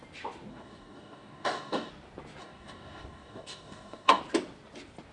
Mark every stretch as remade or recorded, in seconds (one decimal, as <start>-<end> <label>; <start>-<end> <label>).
0.0-0.5 recorded; 0.5-1.9 remade; 1.9-2.4 recorded; 2.4-4.2 remade; 4.2-5.1 recorded